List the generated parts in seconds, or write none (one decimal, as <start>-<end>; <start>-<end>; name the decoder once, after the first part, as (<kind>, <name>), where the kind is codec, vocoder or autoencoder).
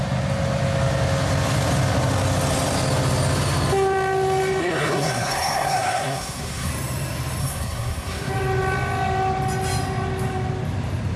4.6-6.7 (codec, SNAC); 7.4-8.3